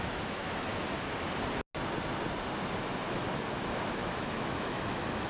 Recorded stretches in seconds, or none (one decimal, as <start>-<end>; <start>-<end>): 0.7-3.9